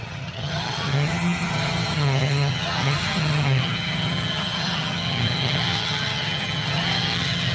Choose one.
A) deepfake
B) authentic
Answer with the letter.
A